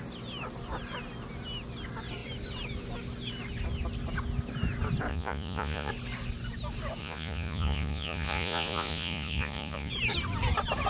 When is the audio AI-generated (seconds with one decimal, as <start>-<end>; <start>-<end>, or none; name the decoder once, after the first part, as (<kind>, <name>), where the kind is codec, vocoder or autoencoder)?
5.1-5.9 (vocoder, Vocos); 7.0-9.9